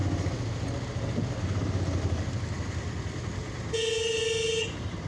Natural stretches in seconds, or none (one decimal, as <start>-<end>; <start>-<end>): 0.0-3.4; 4.2-5.1